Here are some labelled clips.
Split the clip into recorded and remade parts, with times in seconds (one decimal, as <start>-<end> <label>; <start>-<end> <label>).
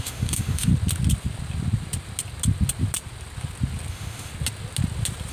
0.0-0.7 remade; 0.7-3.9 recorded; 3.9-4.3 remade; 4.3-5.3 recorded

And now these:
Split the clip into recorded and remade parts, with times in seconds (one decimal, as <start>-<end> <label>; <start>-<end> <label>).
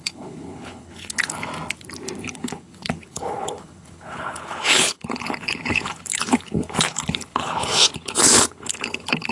0.0-1.5 remade; 1.5-2.2 recorded; 2.2-9.3 remade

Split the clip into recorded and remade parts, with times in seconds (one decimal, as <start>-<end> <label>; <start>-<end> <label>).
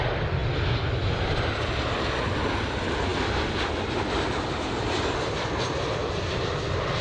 0.0-7.0 recorded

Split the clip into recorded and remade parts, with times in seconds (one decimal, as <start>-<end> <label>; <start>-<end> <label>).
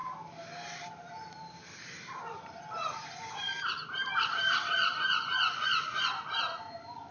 0.0-4.8 recorded; 4.8-6.1 remade; 6.1-7.1 recorded